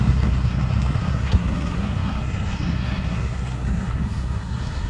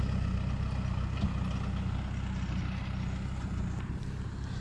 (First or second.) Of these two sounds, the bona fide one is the second